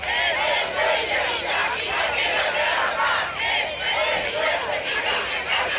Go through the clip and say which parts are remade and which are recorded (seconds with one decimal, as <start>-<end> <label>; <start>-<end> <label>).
0.0-5.8 recorded